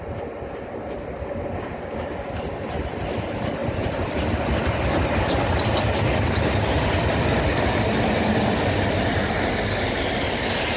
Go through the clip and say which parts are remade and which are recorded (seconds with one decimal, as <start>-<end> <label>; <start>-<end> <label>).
0.0-3.6 recorded; 3.6-4.3 remade; 4.3-10.8 recorded